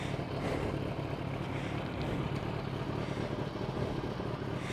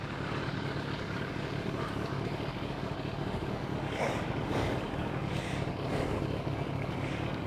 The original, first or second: first